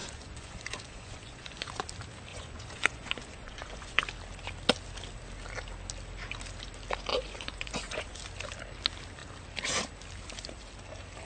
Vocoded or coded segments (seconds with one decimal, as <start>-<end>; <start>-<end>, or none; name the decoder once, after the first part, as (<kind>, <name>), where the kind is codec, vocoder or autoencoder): 0.0-1.7 (vocoder, Vocos); 2.3-4.0; 7.1-8.2